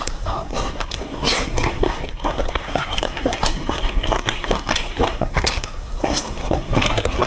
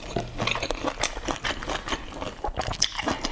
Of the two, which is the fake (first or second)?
first